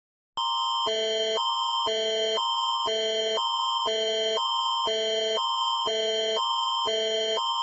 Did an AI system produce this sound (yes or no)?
no